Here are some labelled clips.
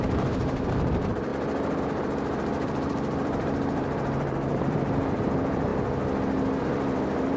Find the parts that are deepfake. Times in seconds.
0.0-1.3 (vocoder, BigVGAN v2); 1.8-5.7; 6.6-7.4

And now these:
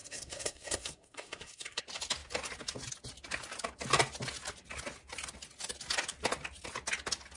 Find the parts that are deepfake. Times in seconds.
0.0-1.8 (codec, SNAC)